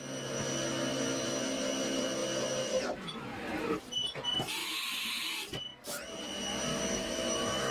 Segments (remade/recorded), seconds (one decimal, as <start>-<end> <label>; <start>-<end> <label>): 0.0-4.6 recorded; 4.6-5.3 remade; 5.3-6.7 recorded; 6.7-7.7 remade

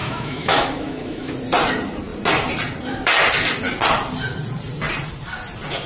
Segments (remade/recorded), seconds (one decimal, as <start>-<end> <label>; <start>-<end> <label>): 0.0-1.3 remade; 1.3-5.9 recorded

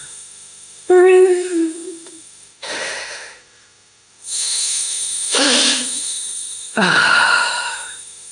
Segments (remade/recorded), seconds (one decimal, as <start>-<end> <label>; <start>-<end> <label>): 0.0-8.3 remade